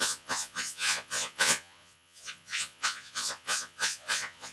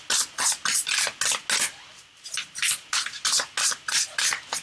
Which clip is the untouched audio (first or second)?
second